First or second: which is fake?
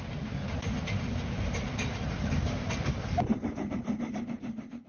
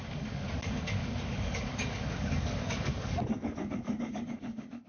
second